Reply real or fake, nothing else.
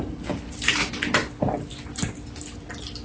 real